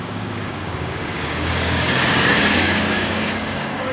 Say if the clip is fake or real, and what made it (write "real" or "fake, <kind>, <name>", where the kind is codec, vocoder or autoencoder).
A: fake, codec, DAC